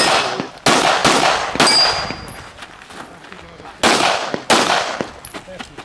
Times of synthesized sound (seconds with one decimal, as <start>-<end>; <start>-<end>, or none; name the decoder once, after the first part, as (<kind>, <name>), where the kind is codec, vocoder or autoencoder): none